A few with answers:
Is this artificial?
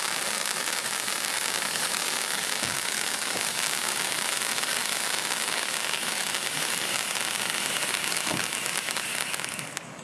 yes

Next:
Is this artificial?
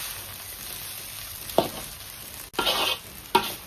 no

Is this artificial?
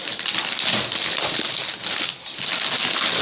no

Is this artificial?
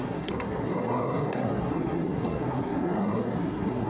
yes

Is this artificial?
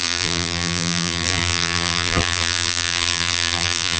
yes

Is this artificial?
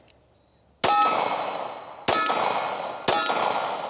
no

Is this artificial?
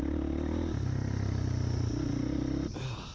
no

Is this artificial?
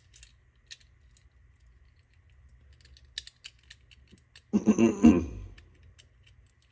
no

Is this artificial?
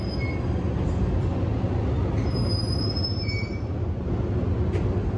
no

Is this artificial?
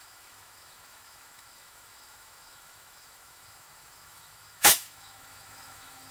yes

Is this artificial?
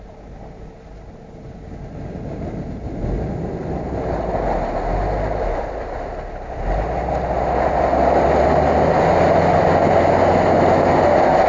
no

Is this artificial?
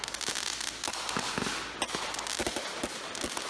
no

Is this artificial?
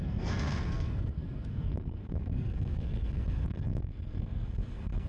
yes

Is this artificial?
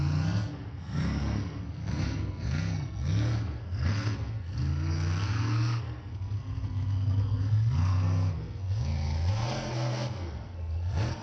yes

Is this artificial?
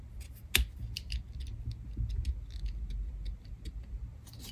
no